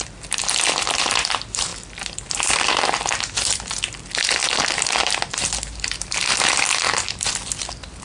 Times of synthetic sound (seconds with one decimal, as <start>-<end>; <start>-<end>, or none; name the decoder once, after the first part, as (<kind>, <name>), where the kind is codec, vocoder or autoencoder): none